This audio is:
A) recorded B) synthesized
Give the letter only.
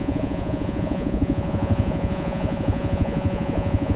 B